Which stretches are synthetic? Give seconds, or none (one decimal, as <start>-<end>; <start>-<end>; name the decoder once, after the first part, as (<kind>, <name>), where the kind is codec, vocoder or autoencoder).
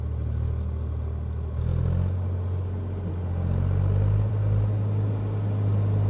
none